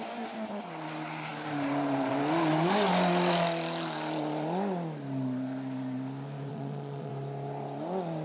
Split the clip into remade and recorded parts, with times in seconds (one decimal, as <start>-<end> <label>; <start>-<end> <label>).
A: 0.0-6.5 recorded; 6.5-7.1 remade; 7.1-8.2 recorded